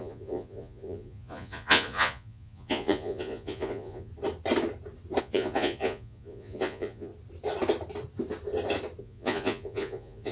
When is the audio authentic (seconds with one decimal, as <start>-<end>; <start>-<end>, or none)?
4.1-5.2; 7.1-9.0